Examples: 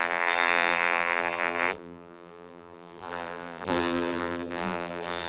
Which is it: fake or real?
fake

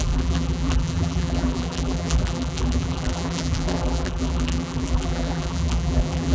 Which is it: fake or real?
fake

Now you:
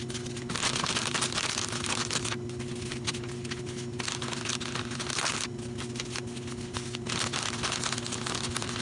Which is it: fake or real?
real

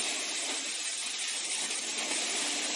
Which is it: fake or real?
fake